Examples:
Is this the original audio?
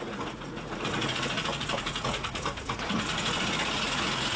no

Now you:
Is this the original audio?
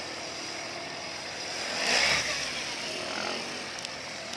yes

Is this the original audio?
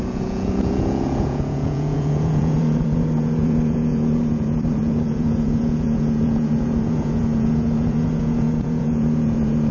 no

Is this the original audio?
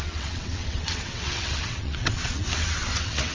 no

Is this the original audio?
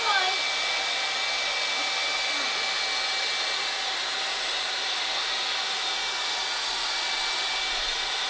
yes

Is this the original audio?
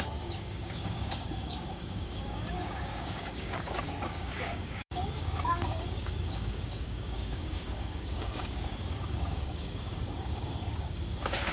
no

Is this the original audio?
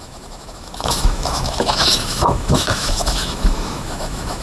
no